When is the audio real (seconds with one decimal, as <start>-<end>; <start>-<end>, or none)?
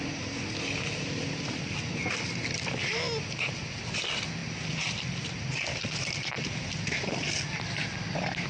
0.0-8.5